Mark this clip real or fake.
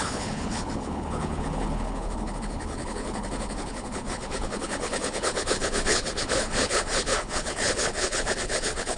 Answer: fake